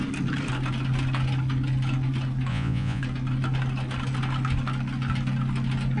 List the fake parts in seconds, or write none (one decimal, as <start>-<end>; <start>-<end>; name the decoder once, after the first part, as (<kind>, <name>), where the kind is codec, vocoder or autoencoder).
2.5-3.0 (vocoder, Vocos)

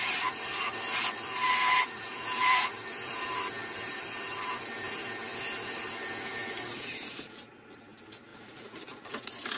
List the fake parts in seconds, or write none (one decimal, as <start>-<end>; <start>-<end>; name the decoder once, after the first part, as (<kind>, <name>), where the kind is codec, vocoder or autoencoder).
0.0-5.3 (vocoder, BigVGAN v2); 6.1-8.3; 9.1-9.6

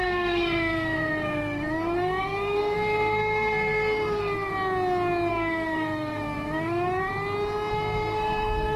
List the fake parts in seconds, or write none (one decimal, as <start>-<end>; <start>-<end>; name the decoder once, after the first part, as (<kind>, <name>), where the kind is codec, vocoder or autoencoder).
0.0-4.5 (codec, SNAC); 5.3-7.1; 7.7-8.8

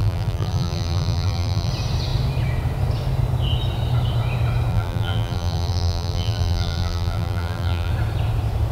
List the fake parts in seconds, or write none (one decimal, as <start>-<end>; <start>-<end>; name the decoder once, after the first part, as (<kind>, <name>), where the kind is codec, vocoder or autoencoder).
0.0-1.7 (vocoder, BigVGAN v2); 4.7-7.9

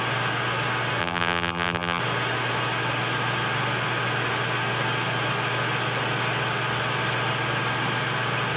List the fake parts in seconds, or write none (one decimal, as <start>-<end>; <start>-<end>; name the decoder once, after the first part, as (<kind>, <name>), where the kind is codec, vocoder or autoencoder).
1.0-2.0 (vocoder, BigVGAN v2)

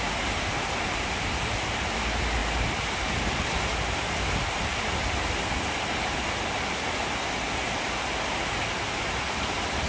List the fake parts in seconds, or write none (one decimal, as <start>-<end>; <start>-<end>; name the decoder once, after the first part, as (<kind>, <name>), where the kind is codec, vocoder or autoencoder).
none

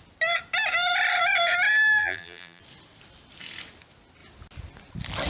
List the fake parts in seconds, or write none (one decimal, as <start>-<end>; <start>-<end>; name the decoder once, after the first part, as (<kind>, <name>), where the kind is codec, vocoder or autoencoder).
2.0-2.6 (vocoder, BigVGAN v2)

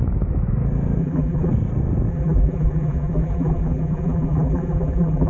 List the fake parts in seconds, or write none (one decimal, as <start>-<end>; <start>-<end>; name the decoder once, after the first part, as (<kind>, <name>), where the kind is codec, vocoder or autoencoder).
1.0-1.5 (vocoder, BigVGAN v2); 2.1-5.3